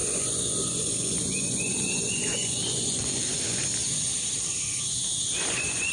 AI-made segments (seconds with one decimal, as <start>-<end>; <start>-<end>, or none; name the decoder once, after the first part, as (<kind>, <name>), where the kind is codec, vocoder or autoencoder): 0.0-3.7 (vocoder, Vocos); 5.5-5.9